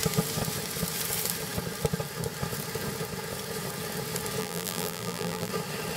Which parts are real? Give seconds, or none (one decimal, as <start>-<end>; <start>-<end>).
0.0-4.4; 5.5-6.0

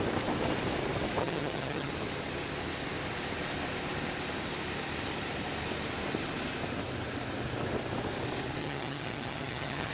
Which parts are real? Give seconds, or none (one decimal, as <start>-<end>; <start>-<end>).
0.0-1.2; 1.9-8.6

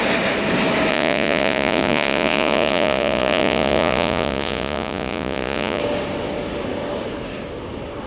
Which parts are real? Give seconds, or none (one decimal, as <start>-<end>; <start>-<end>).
0.0-0.9; 5.8-8.1